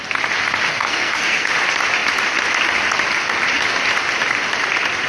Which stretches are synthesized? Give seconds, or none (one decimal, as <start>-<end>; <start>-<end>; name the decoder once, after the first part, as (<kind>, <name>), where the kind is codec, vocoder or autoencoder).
0.7-1.5 (codec, SNAC)